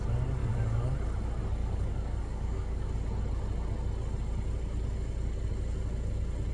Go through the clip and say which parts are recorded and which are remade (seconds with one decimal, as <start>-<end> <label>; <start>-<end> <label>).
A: 0.0-0.4 recorded; 0.4-0.9 remade; 0.9-1.6 recorded; 1.6-2.9 remade; 2.9-6.5 recorded